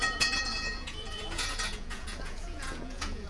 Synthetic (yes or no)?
yes